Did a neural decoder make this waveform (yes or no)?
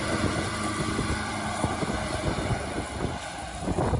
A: no